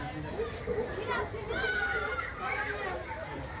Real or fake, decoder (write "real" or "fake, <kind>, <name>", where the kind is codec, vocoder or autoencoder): real